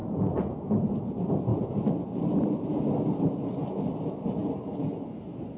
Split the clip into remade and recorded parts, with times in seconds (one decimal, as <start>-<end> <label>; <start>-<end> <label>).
0.0-5.6 recorded